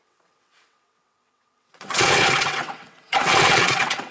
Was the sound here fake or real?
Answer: fake